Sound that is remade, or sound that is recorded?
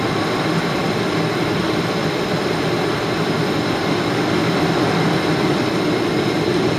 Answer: remade